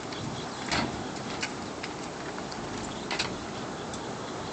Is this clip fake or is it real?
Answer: real